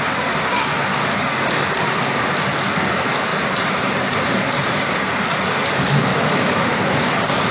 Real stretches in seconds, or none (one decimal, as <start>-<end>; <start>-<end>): 0.0-6.1; 7.1-7.5